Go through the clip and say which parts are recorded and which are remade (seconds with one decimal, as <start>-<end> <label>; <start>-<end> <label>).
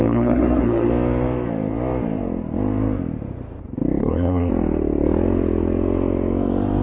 0.0-0.9 remade; 0.9-4.0 recorded; 4.0-4.5 remade; 4.5-6.8 recorded